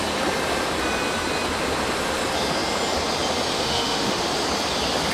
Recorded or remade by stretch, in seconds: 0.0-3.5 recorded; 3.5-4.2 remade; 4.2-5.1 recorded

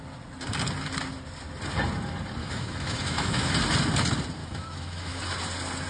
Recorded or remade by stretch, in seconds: 0.0-2.4 recorded; 2.4-3.5 remade; 3.5-4.4 recorded; 4.4-5.2 remade; 5.2-5.9 recorded

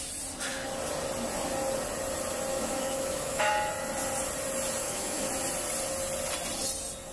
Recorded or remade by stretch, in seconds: 0.0-2.5 recorded; 2.5-3.5 remade; 3.5-4.8 recorded; 4.8-5.3 remade; 5.3-7.1 recorded

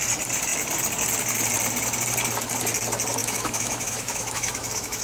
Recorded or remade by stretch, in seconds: 0.0-3.2 recorded; 3.2-5.0 remade

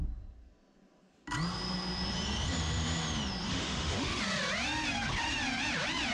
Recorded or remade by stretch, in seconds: 0.0-3.5 recorded; 3.5-4.2 remade; 4.2-6.1 recorded